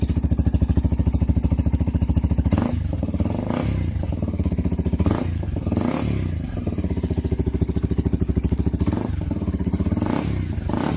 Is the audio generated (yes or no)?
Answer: no